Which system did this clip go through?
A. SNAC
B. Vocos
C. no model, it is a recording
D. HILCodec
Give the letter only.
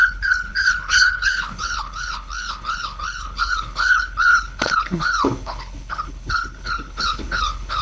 D